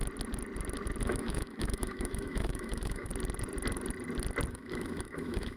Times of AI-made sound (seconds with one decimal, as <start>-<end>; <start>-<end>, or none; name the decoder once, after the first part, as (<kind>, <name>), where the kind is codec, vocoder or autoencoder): 1.0-3.1 (autoencoder, DAC-VAE); 4.5-5.6